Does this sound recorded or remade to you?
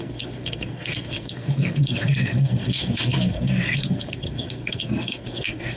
remade